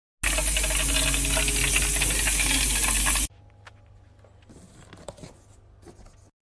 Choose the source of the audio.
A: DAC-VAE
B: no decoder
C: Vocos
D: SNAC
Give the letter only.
B